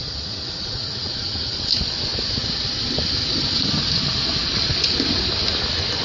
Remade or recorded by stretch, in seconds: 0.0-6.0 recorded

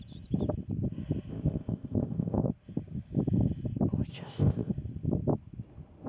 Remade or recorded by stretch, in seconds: 0.0-1.3 recorded; 1.3-2.5 remade; 2.5-4.1 recorded; 4.1-4.7 remade; 4.7-6.1 recorded

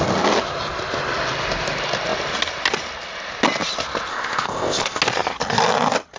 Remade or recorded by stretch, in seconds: 0.0-4.1 recorded; 4.1-5.0 remade; 5.0-6.2 recorded

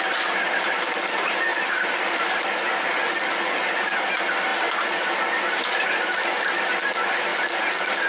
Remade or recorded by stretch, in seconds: 0.0-8.1 recorded

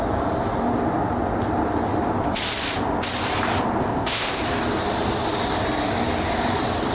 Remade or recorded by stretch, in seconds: 0.0-3.8 recorded; 3.8-4.4 remade; 4.4-6.9 recorded

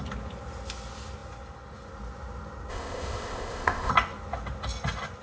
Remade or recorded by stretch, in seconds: 0.0-2.7 recorded; 2.7-3.9 remade; 3.9-5.2 recorded

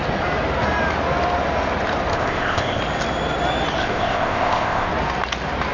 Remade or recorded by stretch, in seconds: 0.0-2.1 recorded; 2.1-2.8 remade; 2.8-3.8 recorded; 3.8-4.9 remade; 4.9-5.7 recorded

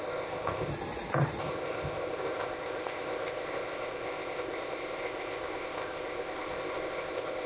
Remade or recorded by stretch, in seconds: 0.0-0.7 remade; 0.7-1.4 recorded; 1.4-7.5 remade